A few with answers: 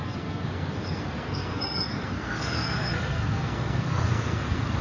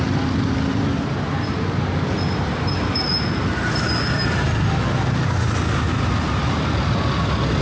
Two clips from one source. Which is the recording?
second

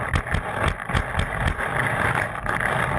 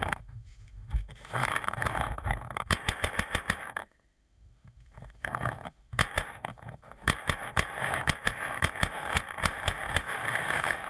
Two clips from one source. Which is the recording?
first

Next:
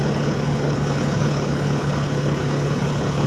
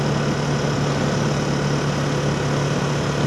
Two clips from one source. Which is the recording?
second